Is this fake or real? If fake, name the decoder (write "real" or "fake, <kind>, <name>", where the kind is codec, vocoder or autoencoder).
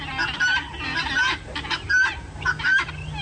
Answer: real